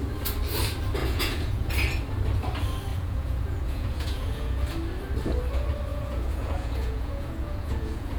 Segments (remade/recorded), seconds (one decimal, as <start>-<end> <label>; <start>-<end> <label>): 0.0-1.0 recorded; 1.0-1.7 remade; 1.7-2.9 recorded; 2.9-4.6 remade; 4.6-5.9 recorded; 5.9-8.2 remade